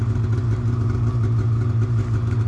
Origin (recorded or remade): recorded